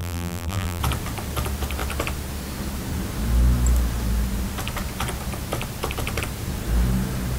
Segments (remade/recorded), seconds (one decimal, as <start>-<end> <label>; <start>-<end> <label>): 0.0-0.8 remade; 0.8-7.4 recorded